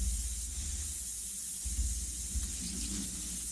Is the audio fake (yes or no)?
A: no